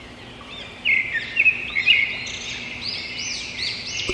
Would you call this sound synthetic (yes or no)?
no